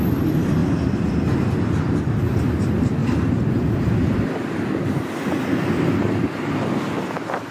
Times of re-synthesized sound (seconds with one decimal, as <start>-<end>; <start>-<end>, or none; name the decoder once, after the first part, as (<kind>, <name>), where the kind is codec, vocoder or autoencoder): none

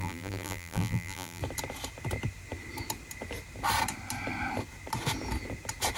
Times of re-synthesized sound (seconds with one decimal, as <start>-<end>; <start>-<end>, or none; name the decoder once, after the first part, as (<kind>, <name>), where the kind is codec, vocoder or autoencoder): 0.0-1.4 (vocoder, BigVGAN v2)